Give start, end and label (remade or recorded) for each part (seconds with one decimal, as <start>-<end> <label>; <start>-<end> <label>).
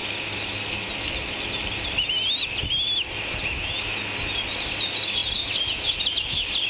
0.0-6.7 recorded